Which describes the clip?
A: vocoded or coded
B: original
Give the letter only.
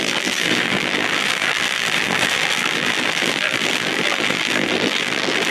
A